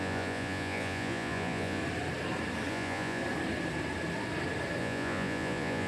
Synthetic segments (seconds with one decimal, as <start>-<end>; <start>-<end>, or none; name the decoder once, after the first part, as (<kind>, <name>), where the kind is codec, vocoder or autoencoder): 0.0-1.8 (vocoder, Vocos); 2.7-3.2; 4.8-5.9

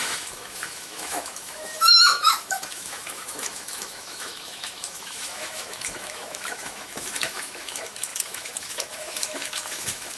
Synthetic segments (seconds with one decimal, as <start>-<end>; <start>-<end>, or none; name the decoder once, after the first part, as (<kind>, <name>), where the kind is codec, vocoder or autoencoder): 0.0-10.2 (autoencoder, DAC-VAE)